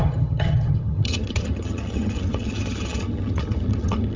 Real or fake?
fake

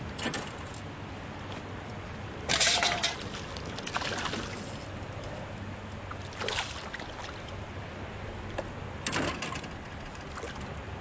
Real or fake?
real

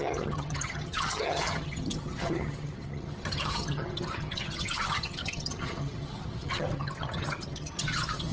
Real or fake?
fake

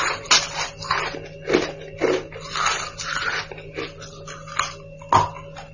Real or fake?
real